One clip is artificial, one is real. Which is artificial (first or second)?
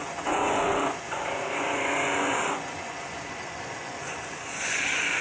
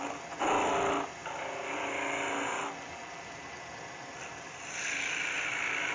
first